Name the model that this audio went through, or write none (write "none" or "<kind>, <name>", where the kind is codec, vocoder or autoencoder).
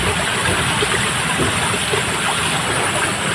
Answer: none